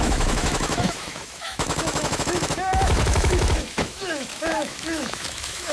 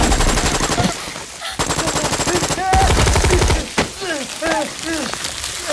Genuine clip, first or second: second